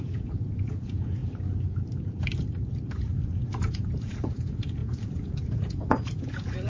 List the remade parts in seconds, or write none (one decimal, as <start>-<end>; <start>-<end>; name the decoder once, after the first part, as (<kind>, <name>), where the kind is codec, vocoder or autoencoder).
0.0-1.2 (vocoder, Vocos); 3.6-6.7